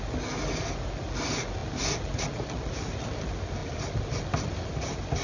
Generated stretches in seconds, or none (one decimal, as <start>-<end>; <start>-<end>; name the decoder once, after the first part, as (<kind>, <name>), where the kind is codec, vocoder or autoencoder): none